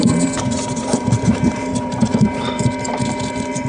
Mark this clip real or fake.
fake